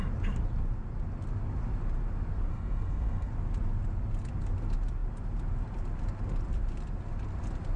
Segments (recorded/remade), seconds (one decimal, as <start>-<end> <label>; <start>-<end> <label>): 0.0-2.5 recorded; 2.5-3.3 remade; 3.3-7.8 recorded